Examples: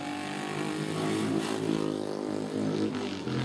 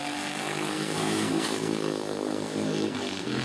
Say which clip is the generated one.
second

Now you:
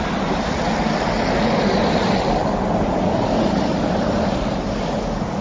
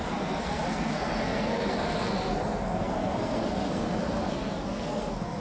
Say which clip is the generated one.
second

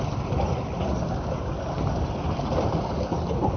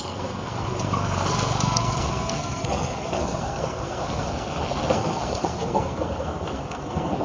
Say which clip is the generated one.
second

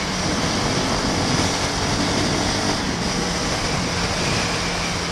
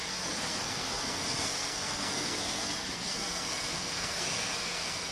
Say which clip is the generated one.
second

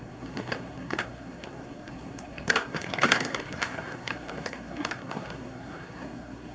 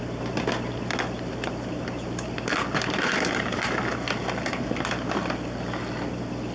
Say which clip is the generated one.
first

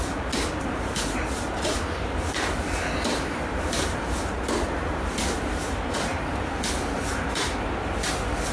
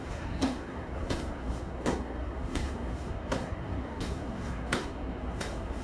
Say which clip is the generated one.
second